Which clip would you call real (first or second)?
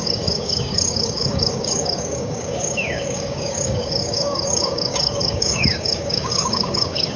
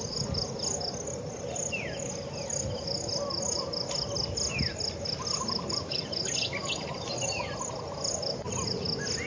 second